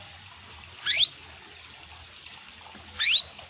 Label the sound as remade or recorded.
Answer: recorded